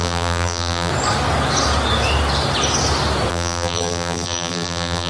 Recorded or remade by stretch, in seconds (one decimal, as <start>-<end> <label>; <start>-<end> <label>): 0.0-0.9 remade; 0.9-3.3 recorded; 3.3-5.1 remade